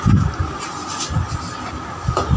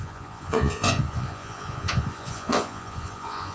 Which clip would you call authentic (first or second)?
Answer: first